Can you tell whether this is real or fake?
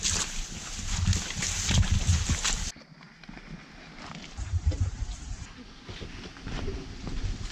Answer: real